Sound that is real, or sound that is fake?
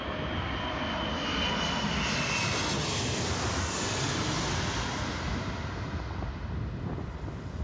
real